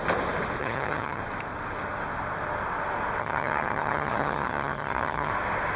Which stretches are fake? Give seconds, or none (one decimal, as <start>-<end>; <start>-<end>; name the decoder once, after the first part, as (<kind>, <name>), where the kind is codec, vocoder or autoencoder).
0.6-1.2 (vocoder, HiFi-GAN); 3.2-5.3